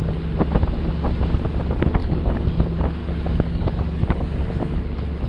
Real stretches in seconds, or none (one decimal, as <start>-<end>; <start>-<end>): 0.0-2.0; 2.6-3.0